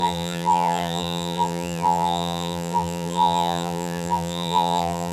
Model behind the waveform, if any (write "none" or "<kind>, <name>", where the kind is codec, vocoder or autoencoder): vocoder, BigVGAN v2